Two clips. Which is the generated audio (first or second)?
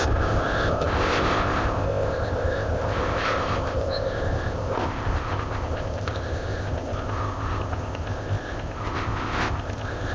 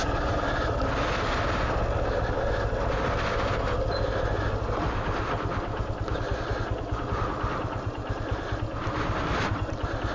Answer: first